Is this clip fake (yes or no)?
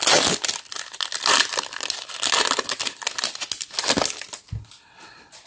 no